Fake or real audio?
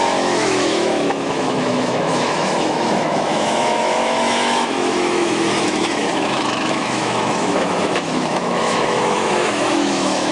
fake